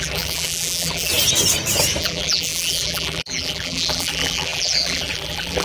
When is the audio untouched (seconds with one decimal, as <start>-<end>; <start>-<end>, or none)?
1.1-2.0